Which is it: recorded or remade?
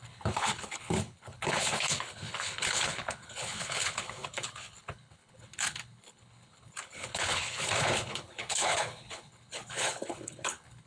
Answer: remade